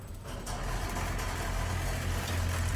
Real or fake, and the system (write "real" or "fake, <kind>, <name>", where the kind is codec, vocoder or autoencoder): real